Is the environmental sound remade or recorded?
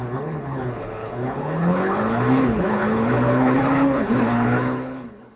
remade